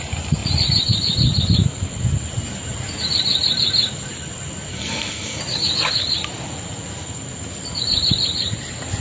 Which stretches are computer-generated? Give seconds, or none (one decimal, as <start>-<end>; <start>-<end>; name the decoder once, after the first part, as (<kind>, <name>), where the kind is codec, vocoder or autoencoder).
4.7-5.4 (codec, SNAC)